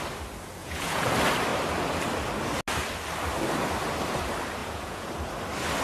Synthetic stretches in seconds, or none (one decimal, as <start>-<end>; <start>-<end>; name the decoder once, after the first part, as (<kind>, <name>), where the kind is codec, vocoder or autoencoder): 0.6-1.1 (vocoder, Vocos); 4.6-5.1